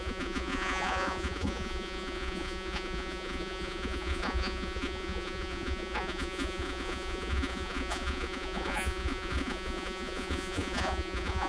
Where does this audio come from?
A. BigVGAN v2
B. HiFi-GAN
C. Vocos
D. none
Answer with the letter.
C